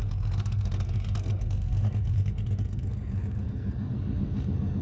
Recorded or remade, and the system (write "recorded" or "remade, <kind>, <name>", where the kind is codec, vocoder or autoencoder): remade, codec, SNAC